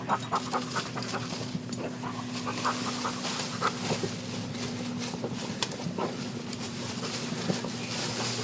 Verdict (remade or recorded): recorded